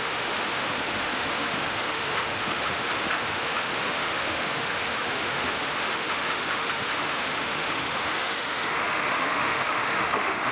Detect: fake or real fake